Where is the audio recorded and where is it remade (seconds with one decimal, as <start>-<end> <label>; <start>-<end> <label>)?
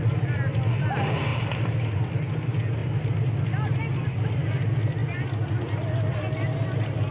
0.0-7.1 recorded